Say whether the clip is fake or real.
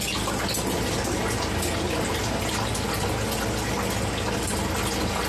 real